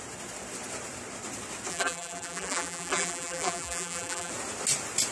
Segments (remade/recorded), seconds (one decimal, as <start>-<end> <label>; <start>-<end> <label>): 0.0-1.7 recorded; 1.7-4.3 remade; 4.3-5.1 recorded